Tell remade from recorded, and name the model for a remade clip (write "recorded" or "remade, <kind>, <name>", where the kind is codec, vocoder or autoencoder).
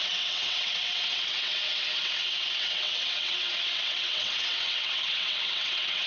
remade, vocoder, WaveNeXt